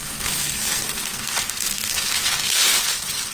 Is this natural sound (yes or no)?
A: no